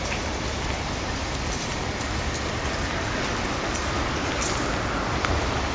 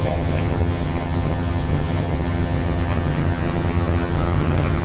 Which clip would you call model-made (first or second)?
second